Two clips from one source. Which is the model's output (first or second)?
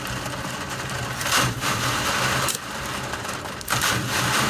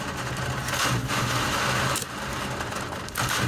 first